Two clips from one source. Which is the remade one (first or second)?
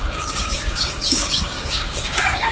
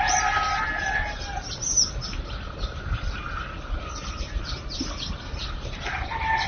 first